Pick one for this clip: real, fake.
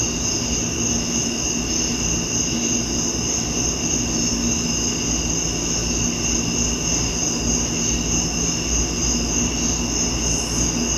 real